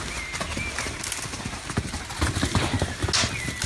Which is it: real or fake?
real